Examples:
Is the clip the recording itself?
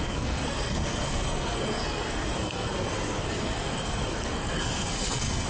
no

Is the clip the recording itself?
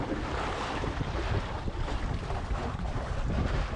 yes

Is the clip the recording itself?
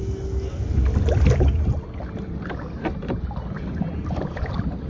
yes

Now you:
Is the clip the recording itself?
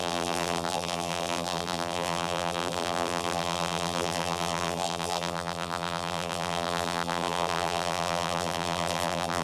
no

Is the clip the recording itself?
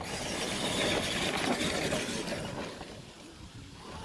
yes